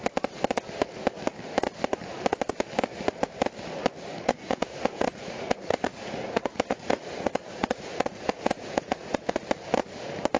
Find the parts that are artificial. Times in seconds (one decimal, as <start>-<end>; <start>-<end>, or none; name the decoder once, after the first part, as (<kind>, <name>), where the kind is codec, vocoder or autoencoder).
4.1-9.3 (vocoder, Vocos)